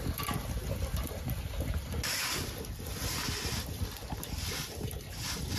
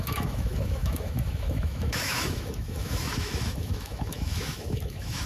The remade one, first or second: second